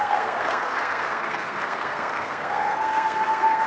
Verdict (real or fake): fake